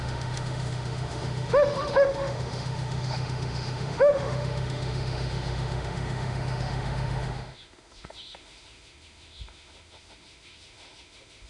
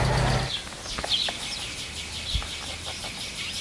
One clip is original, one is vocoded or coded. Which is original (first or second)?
second